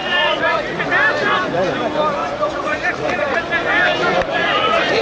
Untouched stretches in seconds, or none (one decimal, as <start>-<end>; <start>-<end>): 0.8-2.2; 3.4-4.4